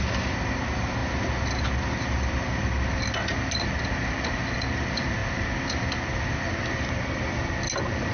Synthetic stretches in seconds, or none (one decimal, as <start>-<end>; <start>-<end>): none

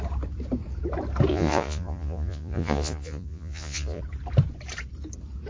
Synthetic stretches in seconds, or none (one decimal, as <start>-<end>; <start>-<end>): 1.3-4.0

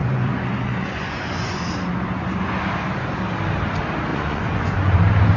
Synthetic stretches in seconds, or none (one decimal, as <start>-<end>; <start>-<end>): 0.0-1.6; 4.1-4.9

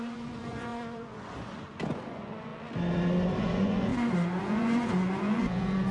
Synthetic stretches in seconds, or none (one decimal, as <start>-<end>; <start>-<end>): 0.0-2.5; 3.4-5.9

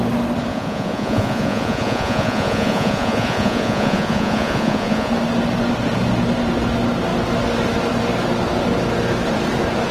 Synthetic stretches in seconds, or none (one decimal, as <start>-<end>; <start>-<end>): 0.5-5.1